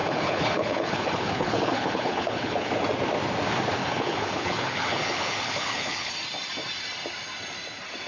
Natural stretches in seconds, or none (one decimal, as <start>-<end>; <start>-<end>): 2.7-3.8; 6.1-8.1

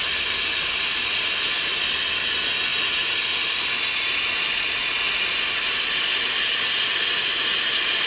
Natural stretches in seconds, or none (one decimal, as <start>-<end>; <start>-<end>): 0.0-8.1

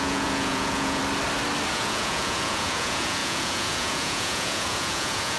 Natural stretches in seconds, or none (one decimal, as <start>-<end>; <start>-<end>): 1.0-1.7

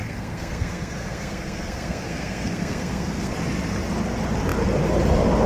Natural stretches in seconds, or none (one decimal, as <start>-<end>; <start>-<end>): 3.3-5.5